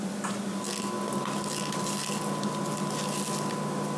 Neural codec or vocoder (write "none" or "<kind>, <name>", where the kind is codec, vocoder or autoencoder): none